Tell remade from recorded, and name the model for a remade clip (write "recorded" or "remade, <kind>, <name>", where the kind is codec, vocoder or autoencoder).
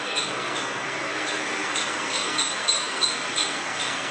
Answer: remade, codec, SNAC